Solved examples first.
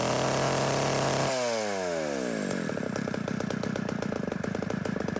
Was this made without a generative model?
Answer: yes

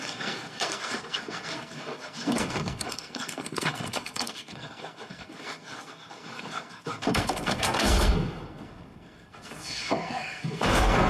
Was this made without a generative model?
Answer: no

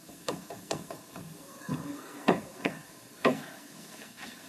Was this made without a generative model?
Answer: no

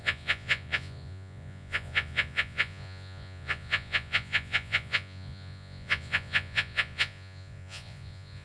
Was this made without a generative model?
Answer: no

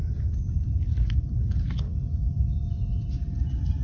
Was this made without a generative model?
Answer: yes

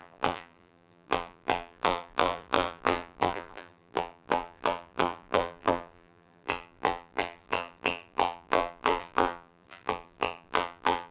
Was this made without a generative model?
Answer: no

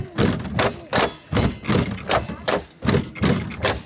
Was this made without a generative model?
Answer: yes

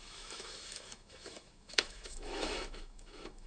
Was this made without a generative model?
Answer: no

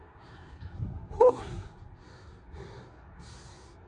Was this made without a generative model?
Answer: no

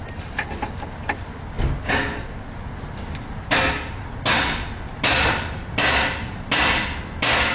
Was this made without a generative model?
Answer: yes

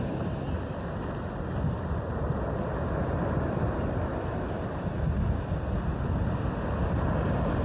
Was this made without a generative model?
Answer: yes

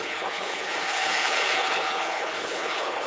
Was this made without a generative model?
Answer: no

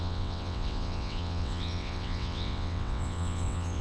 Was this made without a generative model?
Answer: no